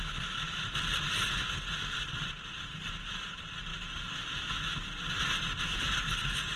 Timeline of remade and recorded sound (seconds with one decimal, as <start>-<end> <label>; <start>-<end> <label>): 0.0-6.6 recorded